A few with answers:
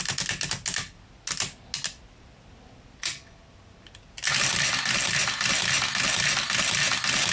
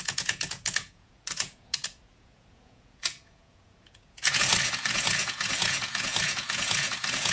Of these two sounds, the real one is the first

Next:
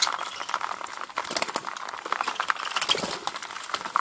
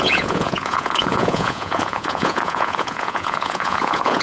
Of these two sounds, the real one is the first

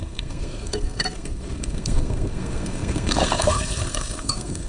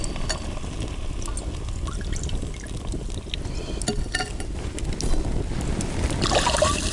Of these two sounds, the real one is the second